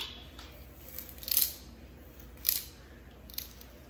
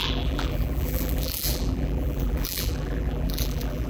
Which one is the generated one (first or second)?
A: second